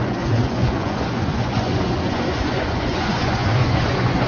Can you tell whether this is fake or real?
fake